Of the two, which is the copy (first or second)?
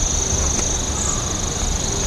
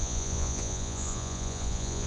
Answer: second